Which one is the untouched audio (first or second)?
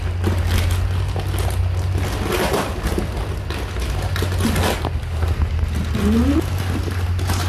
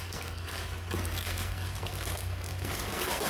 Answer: first